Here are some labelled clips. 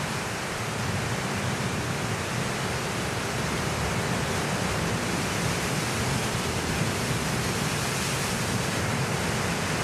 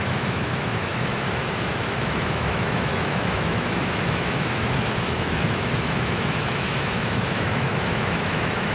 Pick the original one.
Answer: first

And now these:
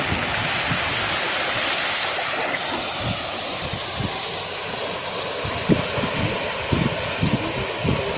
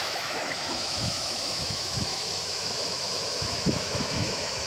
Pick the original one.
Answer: first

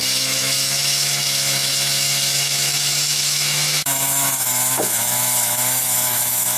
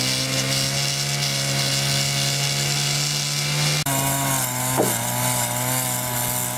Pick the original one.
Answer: second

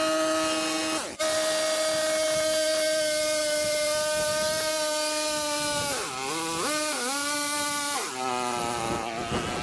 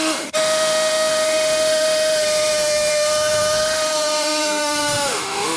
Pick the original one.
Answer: first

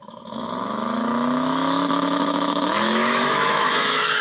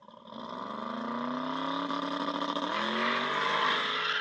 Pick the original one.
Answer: second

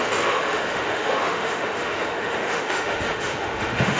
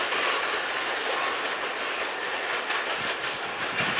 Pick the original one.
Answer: second